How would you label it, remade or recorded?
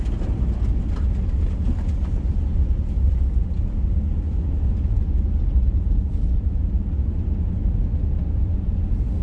recorded